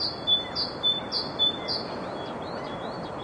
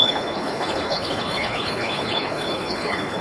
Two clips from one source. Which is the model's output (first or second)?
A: second